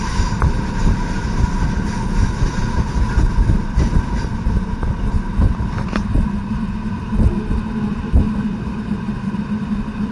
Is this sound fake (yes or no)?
no